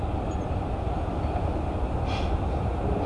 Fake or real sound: real